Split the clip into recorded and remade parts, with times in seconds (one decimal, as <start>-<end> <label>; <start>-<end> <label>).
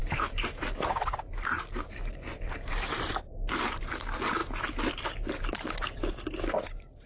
0.0-1.1 remade; 1.1-2.3 recorded; 2.3-3.8 remade; 3.8-7.1 recorded